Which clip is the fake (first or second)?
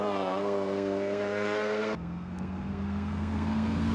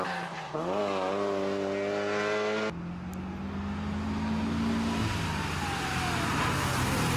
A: first